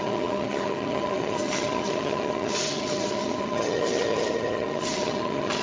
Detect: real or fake fake